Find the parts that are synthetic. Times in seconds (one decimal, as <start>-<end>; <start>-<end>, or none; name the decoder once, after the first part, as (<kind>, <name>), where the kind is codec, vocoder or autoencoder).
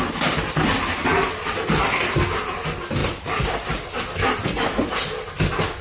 3.0-3.8 (vocoder, BigVGAN v2)